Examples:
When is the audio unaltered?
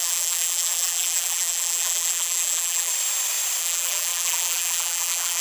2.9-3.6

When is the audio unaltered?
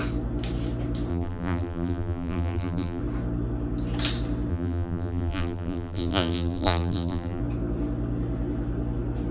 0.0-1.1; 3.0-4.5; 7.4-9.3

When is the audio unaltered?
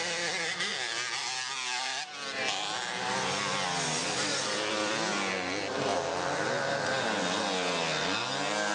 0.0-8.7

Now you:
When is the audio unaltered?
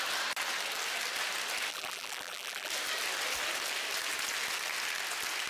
0.0-1.7; 2.7-5.5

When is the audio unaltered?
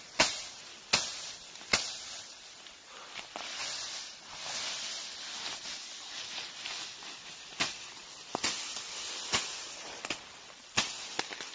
0.0-11.5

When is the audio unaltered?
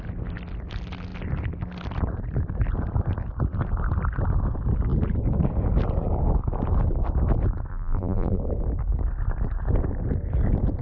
0.0-7.7; 8.4-10.8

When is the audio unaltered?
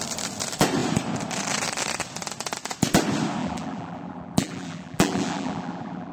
0.0-3.4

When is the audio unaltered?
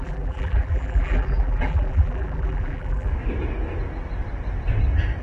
3.1-5.2